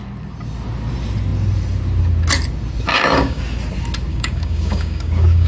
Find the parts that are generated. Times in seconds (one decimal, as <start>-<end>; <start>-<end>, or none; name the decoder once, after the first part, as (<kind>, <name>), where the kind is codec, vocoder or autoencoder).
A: 2.9-3.4 (codec, DAC); 4.1-5.5